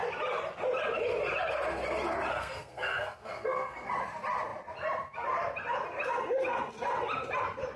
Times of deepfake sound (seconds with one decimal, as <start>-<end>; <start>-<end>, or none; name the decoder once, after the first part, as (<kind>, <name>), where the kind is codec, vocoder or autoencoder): 2.3-3.9 (codec, SNAC)